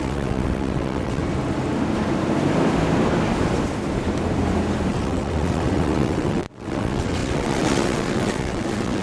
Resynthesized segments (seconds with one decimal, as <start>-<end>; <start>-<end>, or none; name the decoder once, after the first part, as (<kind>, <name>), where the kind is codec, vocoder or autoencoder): 0.0-1.2 (vocoder, WaveNeXt); 4.9-9.0

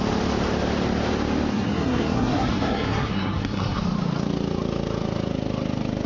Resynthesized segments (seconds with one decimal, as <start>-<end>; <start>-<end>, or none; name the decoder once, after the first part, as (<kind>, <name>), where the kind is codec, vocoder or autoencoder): 1.5-3.8 (codec, SNAC)

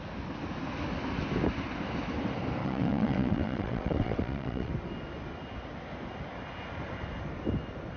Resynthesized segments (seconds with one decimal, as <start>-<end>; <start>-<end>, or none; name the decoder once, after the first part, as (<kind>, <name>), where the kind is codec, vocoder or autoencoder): 2.6-4.7 (vocoder, WaveNeXt)

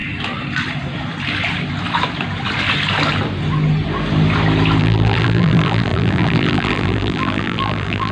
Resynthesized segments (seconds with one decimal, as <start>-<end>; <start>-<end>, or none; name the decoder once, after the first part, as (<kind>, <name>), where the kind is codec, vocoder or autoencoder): 4.8-8.1 (vocoder, BigVGAN v2)